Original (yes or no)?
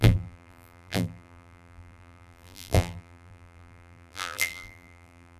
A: no